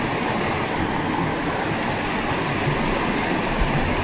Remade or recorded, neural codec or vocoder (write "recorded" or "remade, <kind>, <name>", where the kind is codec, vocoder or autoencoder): recorded